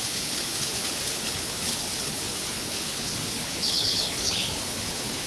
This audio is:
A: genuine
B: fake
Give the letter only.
B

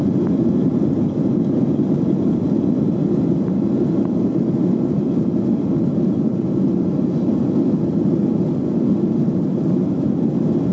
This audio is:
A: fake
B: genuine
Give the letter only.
B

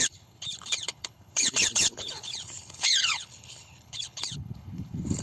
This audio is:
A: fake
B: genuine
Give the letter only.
A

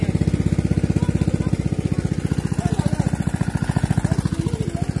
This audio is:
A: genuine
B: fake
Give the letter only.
A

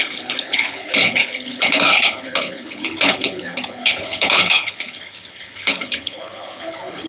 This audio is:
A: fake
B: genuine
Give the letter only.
A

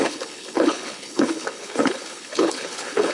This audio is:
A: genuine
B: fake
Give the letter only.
B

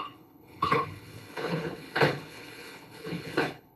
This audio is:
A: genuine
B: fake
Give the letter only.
B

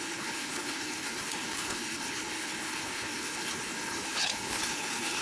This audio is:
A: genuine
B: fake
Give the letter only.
B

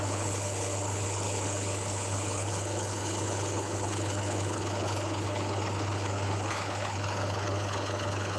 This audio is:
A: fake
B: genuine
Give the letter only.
A